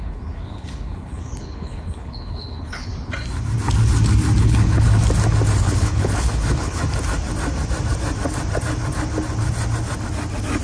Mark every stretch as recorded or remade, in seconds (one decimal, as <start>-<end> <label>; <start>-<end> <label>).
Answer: 0.0-2.9 remade; 2.9-4.4 recorded; 4.4-4.9 remade; 4.9-5.6 recorded; 5.6-6.8 remade; 6.8-10.6 recorded